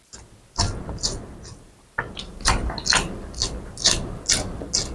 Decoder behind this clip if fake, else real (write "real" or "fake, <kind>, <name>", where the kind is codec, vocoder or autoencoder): real